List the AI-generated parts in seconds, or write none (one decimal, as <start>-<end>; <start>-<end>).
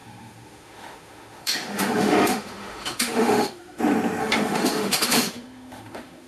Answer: 0.0-3.8; 4.2-6.3